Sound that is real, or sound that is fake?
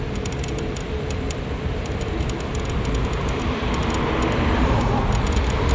fake